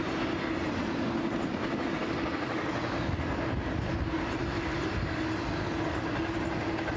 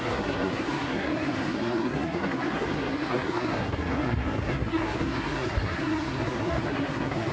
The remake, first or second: second